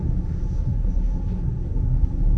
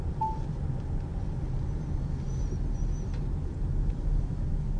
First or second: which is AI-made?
first